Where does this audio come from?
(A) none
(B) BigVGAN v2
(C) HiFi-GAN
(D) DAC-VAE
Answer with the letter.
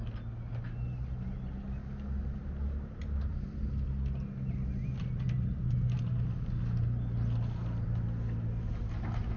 A